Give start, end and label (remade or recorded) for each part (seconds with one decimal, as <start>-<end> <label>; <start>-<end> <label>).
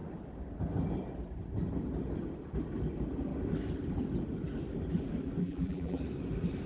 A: 0.0-5.4 recorded; 5.4-6.0 remade; 6.0-6.7 recorded